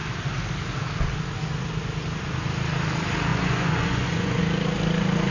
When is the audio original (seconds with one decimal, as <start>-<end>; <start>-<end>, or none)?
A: 0.0-3.3; 4.4-5.3